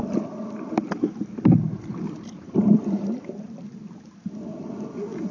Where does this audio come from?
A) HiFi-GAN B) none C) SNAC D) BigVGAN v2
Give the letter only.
B